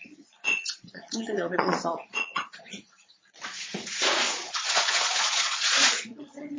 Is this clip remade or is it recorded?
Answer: remade